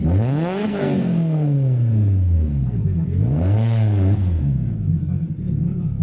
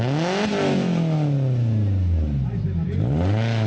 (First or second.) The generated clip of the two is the first